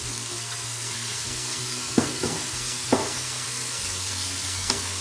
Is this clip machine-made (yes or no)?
yes